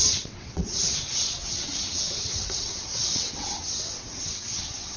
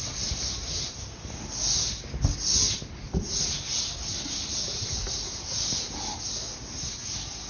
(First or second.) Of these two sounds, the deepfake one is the first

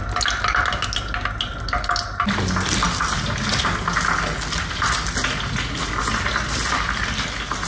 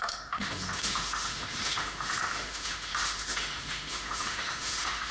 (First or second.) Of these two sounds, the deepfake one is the second